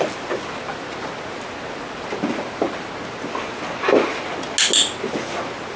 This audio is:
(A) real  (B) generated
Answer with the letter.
A